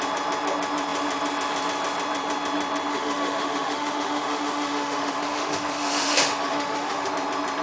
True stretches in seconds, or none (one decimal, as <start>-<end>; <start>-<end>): 0.0-2.9; 7.1-7.6